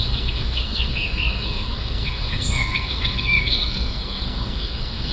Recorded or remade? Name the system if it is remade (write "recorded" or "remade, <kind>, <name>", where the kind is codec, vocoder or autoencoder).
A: remade, codec, SNAC